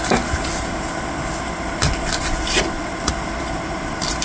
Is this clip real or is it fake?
real